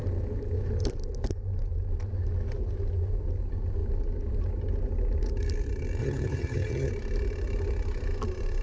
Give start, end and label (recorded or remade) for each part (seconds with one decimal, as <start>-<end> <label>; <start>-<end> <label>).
0.0-6.0 recorded; 6.0-6.9 remade; 6.9-8.6 recorded

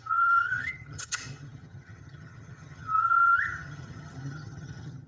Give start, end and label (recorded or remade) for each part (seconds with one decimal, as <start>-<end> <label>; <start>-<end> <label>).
0.0-5.1 remade

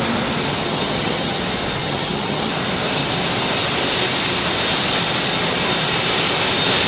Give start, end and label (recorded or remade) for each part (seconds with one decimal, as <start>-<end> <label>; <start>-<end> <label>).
0.0-0.6 recorded; 0.6-1.4 remade; 1.4-1.8 recorded; 1.8-2.5 remade; 2.5-6.9 recorded

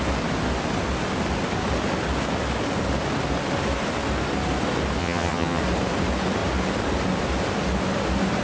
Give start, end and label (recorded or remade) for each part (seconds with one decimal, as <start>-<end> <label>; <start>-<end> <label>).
0.0-5.0 recorded; 5.0-5.6 remade; 5.6-8.4 recorded